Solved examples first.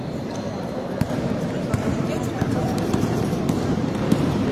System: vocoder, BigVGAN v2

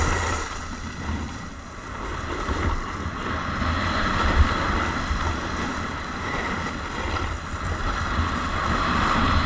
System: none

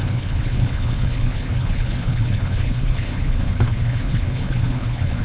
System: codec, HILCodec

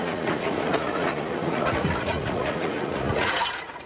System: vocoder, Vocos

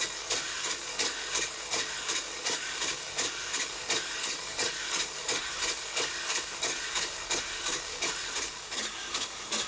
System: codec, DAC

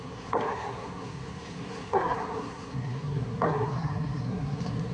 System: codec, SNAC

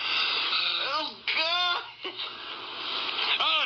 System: none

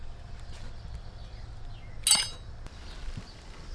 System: none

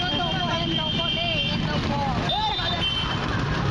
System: none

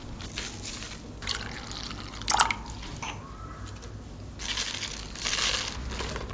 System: none